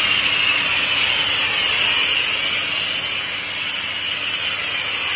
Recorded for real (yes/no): yes